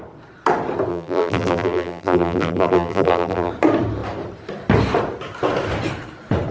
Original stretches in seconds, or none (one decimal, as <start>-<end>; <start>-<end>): 0.0-0.9; 3.5-6.5